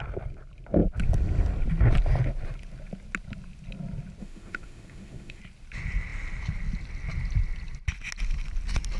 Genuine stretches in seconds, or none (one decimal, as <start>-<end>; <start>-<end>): 0.0-4.2; 5.4-9.0